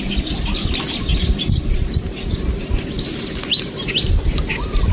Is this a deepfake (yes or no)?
no